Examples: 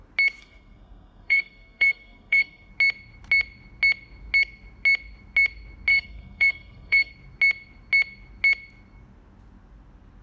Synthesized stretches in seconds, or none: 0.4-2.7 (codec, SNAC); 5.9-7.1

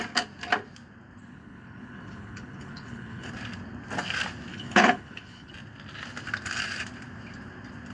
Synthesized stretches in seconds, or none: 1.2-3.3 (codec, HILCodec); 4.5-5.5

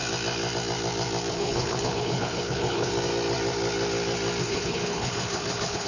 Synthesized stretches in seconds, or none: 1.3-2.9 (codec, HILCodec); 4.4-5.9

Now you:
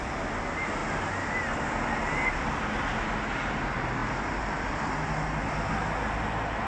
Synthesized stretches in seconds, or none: 0.8-1.8 (vocoder, BigVGAN v2); 4.0-5.7

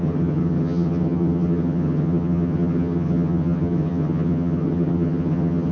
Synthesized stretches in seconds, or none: 0.0-5.7 (vocoder, HiFi-GAN)

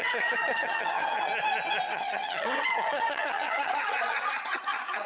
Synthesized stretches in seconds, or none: 0.0-1.3 (vocoder, HiFi-GAN); 1.9-5.1

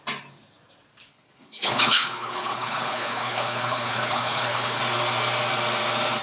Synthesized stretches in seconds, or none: 1.1-4.8 (codec, HILCodec)

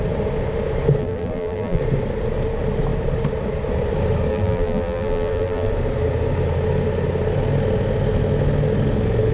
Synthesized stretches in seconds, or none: 1.0-1.8 (vocoder, BigVGAN v2); 4.3-5.7